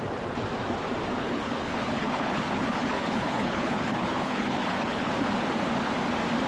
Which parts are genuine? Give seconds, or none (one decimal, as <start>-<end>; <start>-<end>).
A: 0.0-1.2; 5.1-6.5